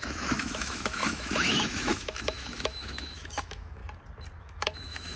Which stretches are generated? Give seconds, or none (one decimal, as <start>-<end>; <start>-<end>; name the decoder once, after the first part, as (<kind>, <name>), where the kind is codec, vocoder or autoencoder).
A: 0.0-3.8 (autoencoder, DAC-VAE); 4.4-5.2